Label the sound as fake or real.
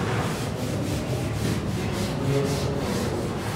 real